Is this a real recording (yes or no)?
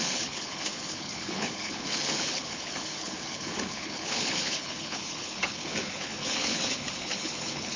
no